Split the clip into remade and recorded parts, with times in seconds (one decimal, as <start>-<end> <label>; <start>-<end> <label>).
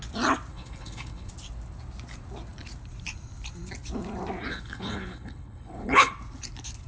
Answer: 0.0-0.5 recorded; 0.5-1.3 remade; 1.3-4.5 recorded; 4.5-6.1 remade; 6.1-6.9 recorded